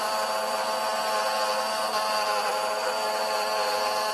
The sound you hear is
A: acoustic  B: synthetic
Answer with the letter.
A